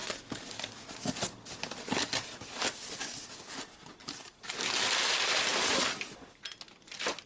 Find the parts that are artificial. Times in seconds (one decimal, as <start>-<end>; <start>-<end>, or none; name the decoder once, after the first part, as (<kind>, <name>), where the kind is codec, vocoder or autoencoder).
none